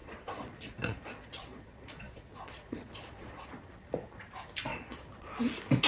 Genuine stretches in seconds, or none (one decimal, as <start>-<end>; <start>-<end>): 3.5-4.7; 5.4-5.9

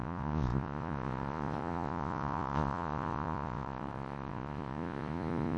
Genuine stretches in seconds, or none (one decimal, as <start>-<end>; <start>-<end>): none

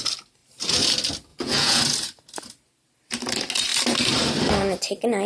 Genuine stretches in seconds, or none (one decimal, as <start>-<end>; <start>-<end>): 0.0-1.3; 1.8-5.3

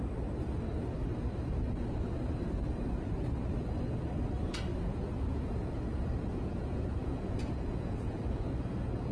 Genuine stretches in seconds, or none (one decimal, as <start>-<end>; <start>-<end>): 0.0-4.7; 5.7-6.3; 8.3-9.1

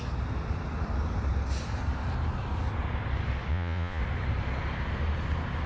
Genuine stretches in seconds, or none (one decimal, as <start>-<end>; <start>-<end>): 0.0-3.5; 4.0-5.7

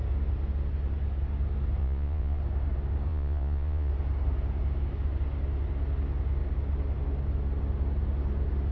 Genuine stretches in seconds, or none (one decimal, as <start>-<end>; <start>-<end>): 0.0-1.8; 2.4-3.1; 3.9-8.7